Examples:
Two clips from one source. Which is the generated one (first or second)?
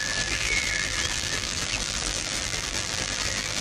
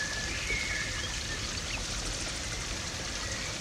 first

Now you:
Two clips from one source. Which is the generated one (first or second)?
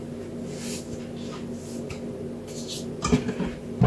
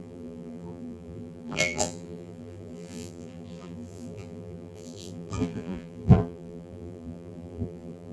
second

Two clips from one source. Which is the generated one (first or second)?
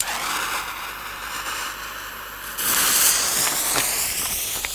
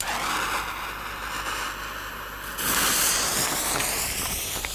first